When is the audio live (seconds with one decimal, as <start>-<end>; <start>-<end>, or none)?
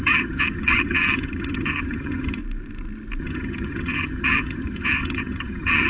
2.4-3.2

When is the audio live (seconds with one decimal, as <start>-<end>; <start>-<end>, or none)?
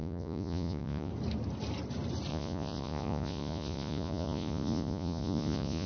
1.1-2.3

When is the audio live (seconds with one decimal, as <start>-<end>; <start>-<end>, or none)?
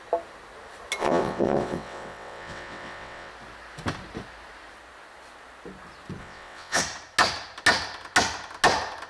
0.0-1.0; 3.3-6.2; 6.8-9.1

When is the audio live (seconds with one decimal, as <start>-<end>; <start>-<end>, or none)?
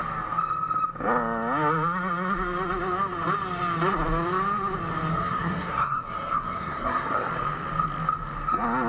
0.0-5.1; 7.3-8.9